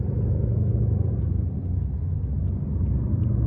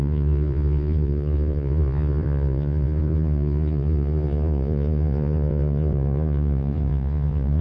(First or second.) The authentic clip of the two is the first